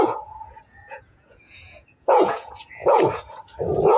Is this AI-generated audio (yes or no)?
yes